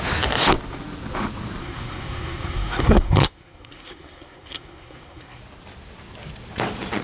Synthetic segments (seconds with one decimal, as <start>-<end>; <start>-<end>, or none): 1.6-5.4